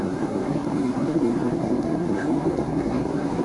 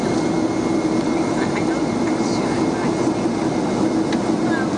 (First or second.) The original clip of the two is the second